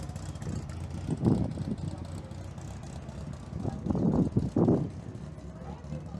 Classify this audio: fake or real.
real